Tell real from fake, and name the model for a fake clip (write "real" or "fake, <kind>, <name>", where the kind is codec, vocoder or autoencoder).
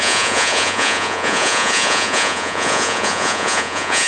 fake, vocoder, Vocos